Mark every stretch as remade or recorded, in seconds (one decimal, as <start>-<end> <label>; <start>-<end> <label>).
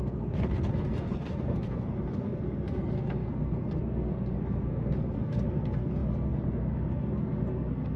0.0-8.0 remade